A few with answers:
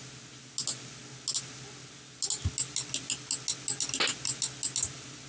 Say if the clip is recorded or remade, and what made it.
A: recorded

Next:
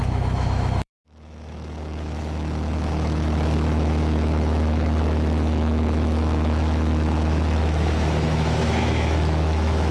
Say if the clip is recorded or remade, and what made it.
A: remade, autoencoder, DAC-VAE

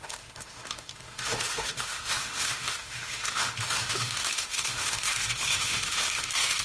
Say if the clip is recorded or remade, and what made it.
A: remade, autoencoder, DAC-VAE